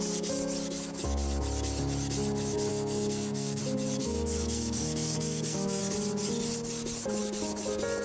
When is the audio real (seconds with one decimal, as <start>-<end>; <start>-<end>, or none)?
0.0-2.7; 3.6-4.0; 5.8-8.0